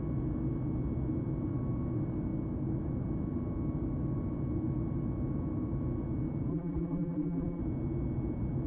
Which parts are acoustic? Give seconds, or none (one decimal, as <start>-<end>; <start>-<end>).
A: 0.0-6.5; 7.6-8.7